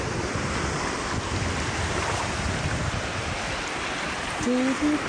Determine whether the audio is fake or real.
real